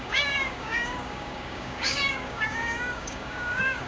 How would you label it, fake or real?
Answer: fake